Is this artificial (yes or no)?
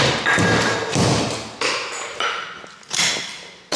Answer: no